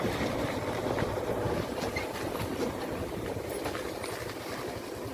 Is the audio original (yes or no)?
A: no